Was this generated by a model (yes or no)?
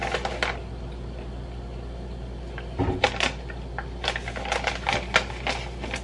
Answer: no